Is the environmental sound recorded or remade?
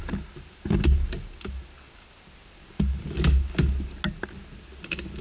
recorded